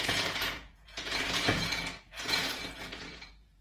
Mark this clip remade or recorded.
remade